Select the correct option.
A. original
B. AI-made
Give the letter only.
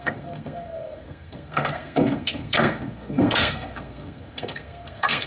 B